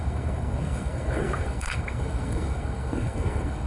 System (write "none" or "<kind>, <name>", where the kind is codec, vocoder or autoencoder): codec, SNAC